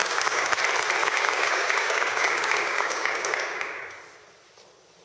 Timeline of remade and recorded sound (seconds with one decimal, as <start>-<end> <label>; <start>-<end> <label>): 0.0-0.6 remade; 0.6-1.0 recorded; 1.0-4.0 remade; 4.0-5.0 recorded